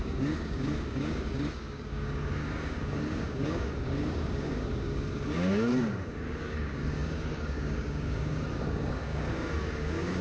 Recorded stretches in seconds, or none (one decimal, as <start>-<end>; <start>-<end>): none

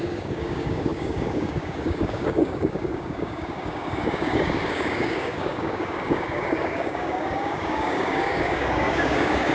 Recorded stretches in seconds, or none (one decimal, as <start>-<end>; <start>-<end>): none

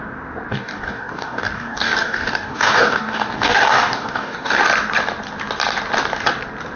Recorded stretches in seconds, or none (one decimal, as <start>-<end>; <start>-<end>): 0.0-0.5; 4.6-6.8